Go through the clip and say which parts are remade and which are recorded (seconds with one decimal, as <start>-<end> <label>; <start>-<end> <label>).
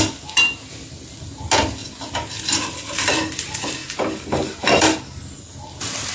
0.0-6.1 recorded